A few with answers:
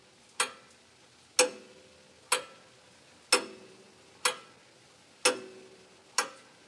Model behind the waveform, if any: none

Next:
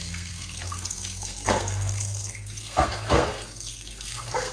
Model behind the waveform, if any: codec, SNAC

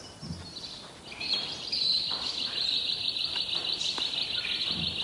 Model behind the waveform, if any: none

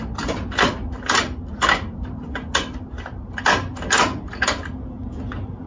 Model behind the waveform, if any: none